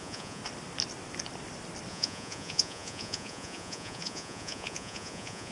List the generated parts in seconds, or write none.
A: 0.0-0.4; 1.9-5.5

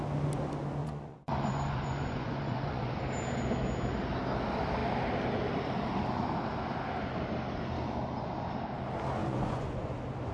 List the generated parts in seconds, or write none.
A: 0.8-3.0; 9.2-9.9